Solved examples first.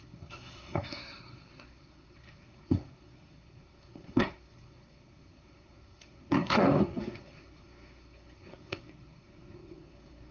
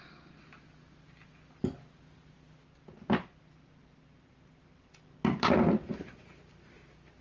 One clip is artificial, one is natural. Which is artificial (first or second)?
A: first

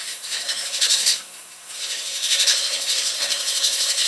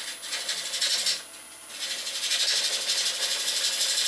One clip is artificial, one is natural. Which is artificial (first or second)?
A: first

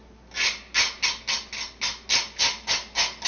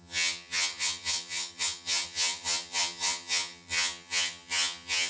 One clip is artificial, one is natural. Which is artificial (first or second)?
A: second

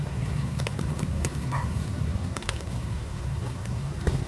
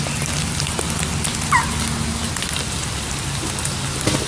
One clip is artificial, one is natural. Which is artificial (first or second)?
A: first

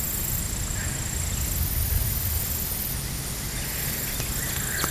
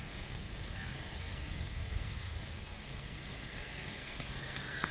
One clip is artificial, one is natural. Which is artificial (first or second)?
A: second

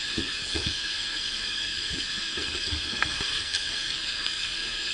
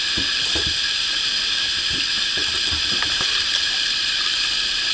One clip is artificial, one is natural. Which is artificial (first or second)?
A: first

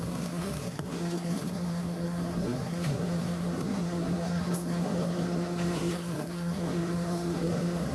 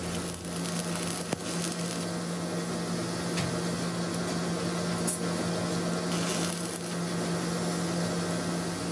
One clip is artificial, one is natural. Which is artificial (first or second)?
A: first